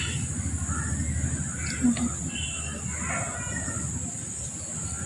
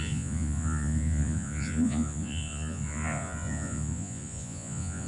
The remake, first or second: second